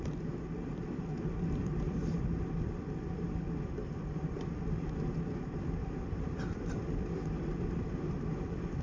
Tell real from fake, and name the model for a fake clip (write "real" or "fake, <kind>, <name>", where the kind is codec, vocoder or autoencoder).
fake, vocoder, BigVGAN v2